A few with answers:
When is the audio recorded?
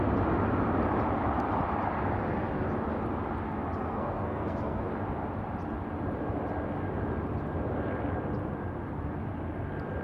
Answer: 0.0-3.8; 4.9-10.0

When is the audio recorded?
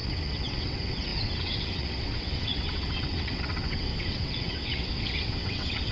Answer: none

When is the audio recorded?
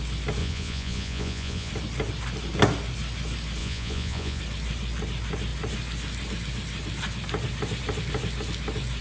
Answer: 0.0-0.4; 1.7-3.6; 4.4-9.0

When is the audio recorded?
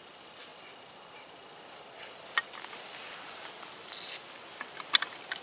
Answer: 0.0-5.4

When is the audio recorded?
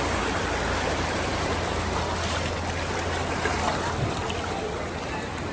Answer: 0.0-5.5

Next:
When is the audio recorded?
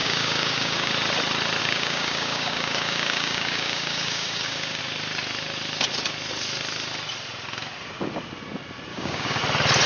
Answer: 0.9-1.6; 4.8-8.9; 9.4-9.9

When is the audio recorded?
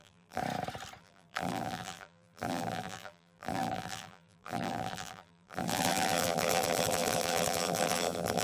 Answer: 0.4-1.0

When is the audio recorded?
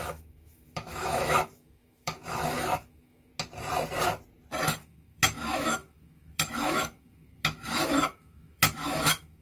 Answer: 3.3-4.8